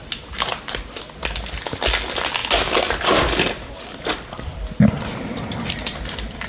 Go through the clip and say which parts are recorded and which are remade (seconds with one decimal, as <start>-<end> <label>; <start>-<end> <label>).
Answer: 0.0-0.5 recorded; 0.5-1.0 remade; 1.0-6.5 recorded